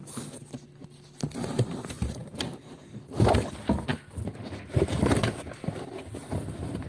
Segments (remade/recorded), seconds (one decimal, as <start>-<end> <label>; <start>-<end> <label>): 0.0-6.9 recorded